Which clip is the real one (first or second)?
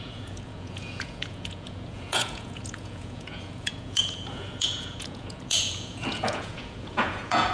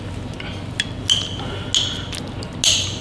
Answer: second